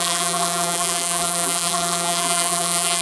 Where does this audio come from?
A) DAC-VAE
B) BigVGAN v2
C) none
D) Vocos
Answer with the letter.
B